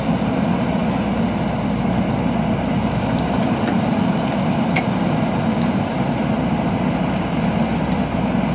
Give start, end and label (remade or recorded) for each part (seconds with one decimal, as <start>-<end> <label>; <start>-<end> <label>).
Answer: 0.0-8.5 recorded